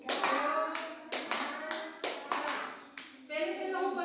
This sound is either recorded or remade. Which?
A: recorded